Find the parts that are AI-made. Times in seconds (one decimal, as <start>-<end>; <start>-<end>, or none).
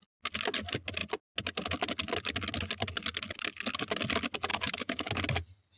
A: 4.5-5.1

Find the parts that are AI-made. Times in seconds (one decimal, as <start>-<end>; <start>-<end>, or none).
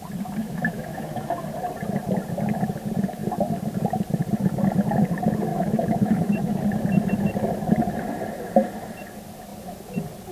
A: 0.4-1.4; 5.5-6.6